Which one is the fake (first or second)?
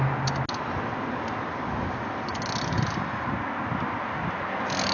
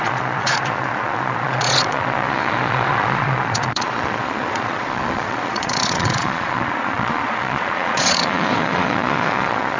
second